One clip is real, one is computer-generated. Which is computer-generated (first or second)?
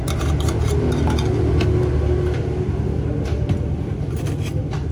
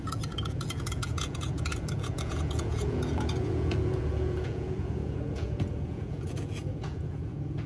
second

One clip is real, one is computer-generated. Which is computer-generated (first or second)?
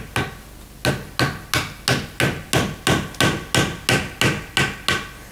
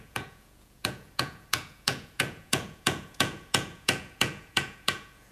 second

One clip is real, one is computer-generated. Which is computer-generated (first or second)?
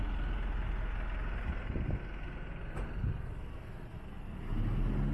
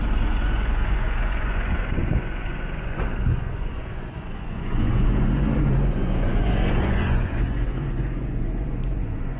second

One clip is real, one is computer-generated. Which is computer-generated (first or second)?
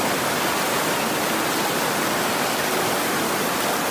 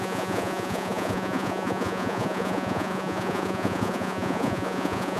second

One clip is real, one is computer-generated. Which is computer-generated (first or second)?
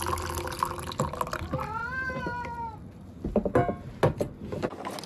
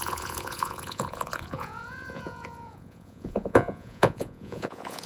second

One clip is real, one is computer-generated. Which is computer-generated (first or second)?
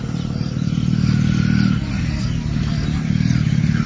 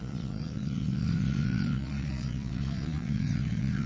second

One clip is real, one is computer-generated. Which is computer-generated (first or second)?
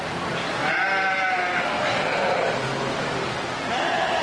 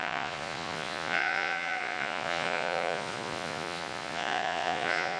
second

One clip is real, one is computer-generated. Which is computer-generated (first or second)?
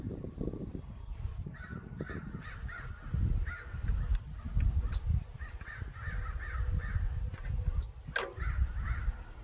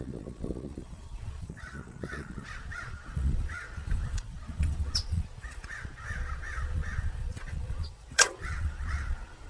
second